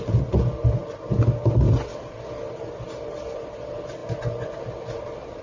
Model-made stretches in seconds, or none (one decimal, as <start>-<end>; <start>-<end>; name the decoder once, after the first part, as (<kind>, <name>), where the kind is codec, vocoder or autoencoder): none

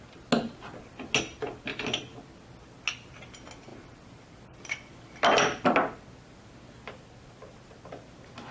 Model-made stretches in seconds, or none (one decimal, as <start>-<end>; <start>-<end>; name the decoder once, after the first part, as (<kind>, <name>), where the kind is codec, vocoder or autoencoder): none

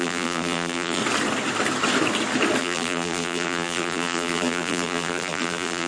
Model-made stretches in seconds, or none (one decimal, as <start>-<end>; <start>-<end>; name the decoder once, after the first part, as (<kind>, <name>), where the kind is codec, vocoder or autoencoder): 0.0-1.0 (vocoder, BigVGAN v2); 2.6-5.9

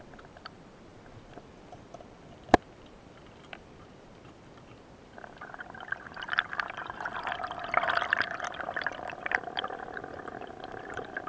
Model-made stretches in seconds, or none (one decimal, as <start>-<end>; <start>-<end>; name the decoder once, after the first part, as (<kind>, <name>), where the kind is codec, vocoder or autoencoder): 0.0-0.9 (vocoder, BigVGAN v2); 1.8-11.3